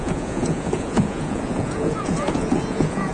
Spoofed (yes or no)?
yes